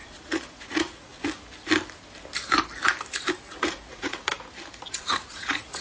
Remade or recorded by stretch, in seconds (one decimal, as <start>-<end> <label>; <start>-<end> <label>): 0.0-1.1 remade; 1.1-3.5 recorded; 3.5-4.3 remade; 4.3-5.0 recorded; 5.0-5.8 remade